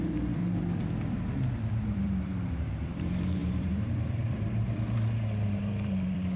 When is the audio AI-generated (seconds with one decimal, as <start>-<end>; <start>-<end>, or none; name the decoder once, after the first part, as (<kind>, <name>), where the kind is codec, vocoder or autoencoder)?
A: 0.0-0.4 (vocoder, BigVGAN v2); 1.7-6.4